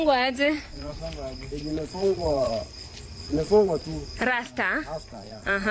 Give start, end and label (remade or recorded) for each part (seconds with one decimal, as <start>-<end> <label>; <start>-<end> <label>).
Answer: 0.0-1.0 remade; 1.0-1.7 recorded; 1.7-2.6 remade; 2.6-3.2 recorded; 3.2-3.9 remade; 3.9-5.1 recorded; 5.1-5.7 remade